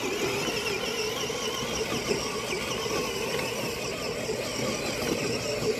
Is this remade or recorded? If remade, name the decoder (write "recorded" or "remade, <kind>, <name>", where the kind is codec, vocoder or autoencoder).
recorded